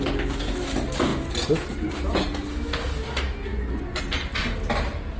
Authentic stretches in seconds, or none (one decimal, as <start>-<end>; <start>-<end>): 0.0-3.5; 4.0-5.2